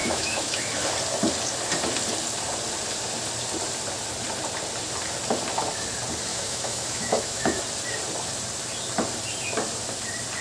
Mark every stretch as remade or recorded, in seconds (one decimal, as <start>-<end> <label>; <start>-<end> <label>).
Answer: 0.0-0.7 remade; 0.7-6.3 recorded; 6.3-7.6 remade; 7.6-10.4 recorded